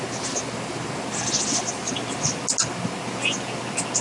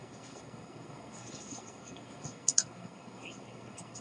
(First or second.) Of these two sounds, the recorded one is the first